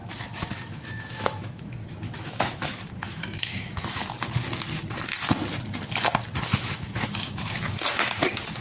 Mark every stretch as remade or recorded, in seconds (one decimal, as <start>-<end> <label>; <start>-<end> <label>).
0.0-4.0 remade; 4.0-6.5 recorded; 6.5-7.7 remade; 7.7-8.6 recorded